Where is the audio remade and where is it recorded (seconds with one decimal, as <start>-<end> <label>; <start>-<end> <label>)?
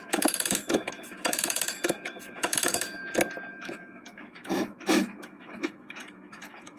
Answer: 0.0-3.0 remade; 3.0-3.5 recorded; 3.5-6.8 remade